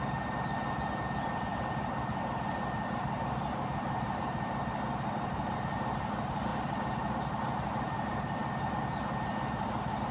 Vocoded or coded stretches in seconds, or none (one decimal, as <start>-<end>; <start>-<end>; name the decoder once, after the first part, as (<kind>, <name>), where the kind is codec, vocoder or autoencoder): none